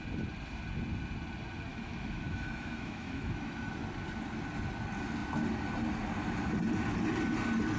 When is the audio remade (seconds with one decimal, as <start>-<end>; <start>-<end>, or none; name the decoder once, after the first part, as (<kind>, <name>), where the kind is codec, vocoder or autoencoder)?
1.7-3.7 (autoencoder, DAC-VAE)